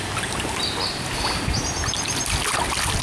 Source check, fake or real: real